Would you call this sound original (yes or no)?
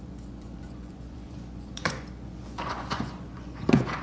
no